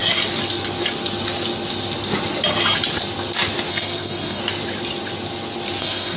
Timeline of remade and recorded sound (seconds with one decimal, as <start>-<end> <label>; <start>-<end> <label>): 0.0-3.7 recorded; 3.7-4.4 remade; 4.4-5.8 recorded; 5.8-6.2 remade